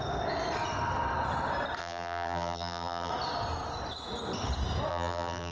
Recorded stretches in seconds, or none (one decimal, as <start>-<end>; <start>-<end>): 0.0-1.8; 3.1-4.9